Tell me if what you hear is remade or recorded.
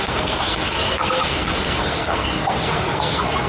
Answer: remade